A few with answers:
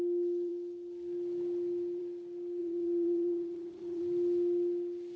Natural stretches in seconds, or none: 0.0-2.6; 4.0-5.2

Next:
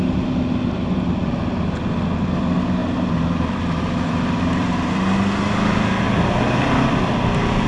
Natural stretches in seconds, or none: 0.0-2.8; 4.9-7.7

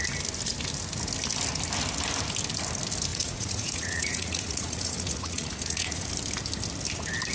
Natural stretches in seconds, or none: 0.0-3.1; 6.1-7.3

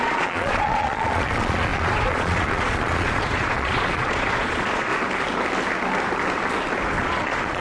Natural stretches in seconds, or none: 4.9-7.0

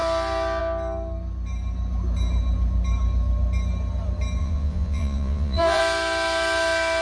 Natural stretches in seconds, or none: 0.0-4.4; 5.8-7.0

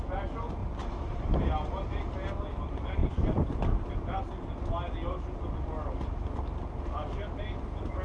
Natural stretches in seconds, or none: 0.0-0.6; 1.2-3.0; 3.9-8.0

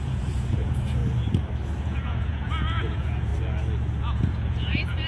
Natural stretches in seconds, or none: 1.0-1.8; 3.3-4.0

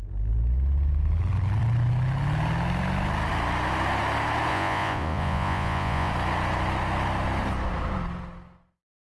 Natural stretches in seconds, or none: 0.0-4.5; 6.1-9.2